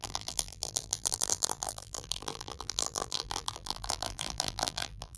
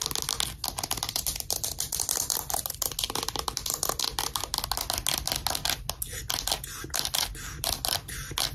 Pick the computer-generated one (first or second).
first